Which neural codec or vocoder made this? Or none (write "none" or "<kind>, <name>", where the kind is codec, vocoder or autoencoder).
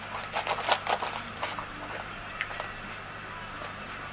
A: none